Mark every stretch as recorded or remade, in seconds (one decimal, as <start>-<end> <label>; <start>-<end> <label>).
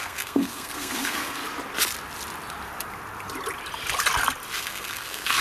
0.0-1.4 remade; 1.4-4.6 recorded; 4.6-5.4 remade